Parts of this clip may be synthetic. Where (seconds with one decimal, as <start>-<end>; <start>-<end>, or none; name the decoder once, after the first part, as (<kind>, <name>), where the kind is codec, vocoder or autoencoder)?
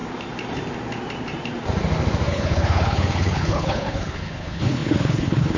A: 2.3-5.6 (codec, HILCodec)